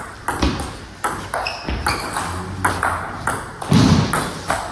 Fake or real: real